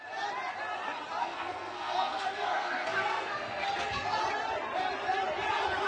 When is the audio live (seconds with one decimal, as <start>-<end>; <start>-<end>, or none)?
0.0-1.2; 4.2-5.9